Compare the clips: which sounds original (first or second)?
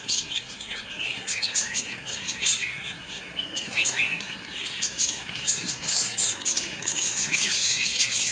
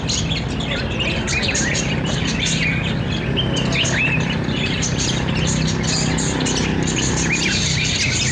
second